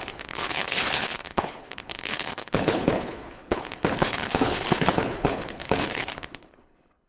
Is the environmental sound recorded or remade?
remade